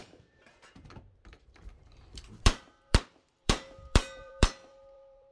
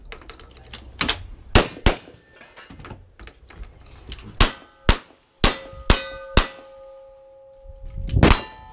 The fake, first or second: first